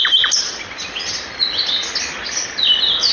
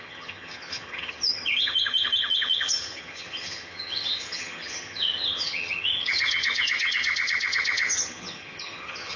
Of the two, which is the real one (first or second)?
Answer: first